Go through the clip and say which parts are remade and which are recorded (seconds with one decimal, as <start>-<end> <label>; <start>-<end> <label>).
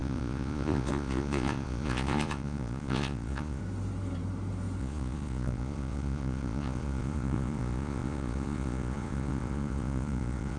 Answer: 0.0-3.6 remade; 3.6-4.8 recorded; 4.8-10.6 remade